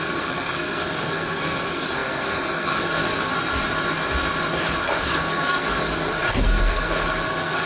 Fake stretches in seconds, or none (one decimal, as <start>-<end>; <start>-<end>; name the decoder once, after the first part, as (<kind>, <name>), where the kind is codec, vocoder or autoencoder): 0.0-3.3 (codec, SNAC); 4.8-7.7